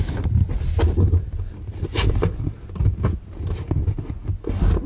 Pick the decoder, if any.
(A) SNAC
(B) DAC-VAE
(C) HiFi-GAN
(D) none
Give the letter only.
D